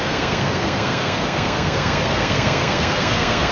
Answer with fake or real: fake